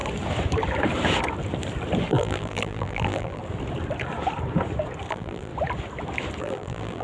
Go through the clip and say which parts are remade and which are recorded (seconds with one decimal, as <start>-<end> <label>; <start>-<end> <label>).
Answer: 0.0-2.1 recorded; 2.1-3.4 remade; 3.4-5.1 recorded; 5.1-5.5 remade; 5.5-6.4 recorded; 6.4-7.0 remade